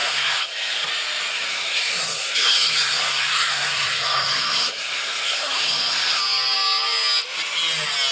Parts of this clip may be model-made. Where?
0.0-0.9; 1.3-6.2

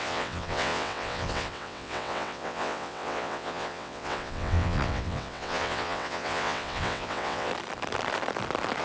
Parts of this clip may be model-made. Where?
0.0-7.5

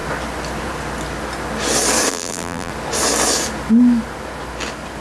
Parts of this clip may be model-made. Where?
2.1-2.7

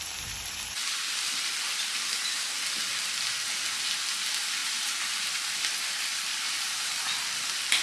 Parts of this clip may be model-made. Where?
4.6-5.4; 6.3-6.9

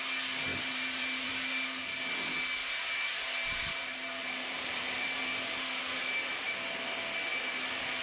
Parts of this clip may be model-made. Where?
0.5-1.3; 2.6-5.8